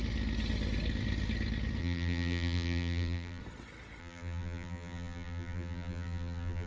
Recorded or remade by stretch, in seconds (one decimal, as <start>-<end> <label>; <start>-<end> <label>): 0.0-1.8 recorded; 1.8-3.4 remade; 3.4-4.0 recorded; 4.0-6.7 remade

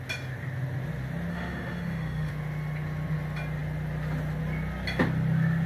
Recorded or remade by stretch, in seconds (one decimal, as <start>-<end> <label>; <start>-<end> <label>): 0.0-1.3 recorded; 1.3-2.3 remade; 2.3-5.7 recorded

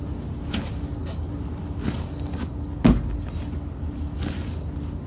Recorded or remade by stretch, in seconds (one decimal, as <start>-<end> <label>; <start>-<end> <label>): 0.0-5.1 recorded

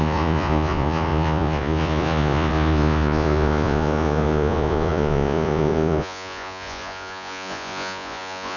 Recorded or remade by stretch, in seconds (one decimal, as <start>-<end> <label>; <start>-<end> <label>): 0.0-8.6 remade

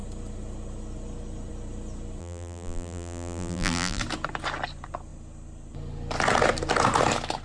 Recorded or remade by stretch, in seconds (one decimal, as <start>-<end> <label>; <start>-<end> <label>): 0.0-2.2 recorded; 2.2-4.0 remade; 4.0-7.4 recorded